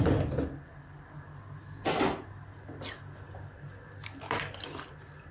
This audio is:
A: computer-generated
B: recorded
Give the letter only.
B